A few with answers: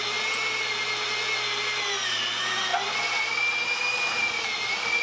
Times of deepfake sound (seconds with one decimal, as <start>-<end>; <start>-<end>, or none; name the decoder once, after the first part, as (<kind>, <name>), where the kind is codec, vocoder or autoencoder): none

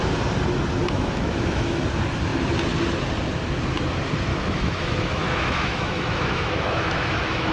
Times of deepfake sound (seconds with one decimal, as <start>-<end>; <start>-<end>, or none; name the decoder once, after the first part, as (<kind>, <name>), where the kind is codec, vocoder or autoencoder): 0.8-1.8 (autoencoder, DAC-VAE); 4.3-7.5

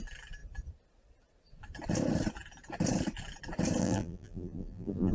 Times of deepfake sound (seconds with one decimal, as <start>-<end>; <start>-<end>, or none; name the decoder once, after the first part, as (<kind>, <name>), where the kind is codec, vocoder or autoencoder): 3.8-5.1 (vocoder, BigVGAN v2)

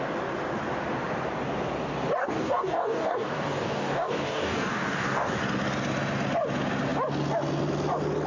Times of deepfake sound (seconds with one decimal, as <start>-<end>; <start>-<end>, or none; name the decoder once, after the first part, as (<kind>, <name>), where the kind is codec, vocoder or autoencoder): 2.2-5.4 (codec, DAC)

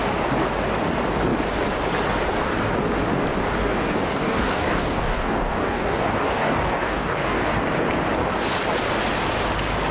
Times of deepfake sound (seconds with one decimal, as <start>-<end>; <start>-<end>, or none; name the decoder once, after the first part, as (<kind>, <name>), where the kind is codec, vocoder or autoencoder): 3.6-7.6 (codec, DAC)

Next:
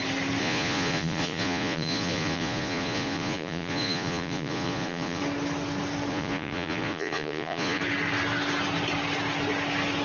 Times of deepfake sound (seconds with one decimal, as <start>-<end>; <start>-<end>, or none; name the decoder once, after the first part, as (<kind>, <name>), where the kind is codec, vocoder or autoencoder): 0.4-5.2 (vocoder, Vocos); 6.1-7.8